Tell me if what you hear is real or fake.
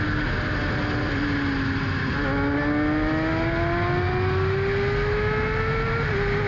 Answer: real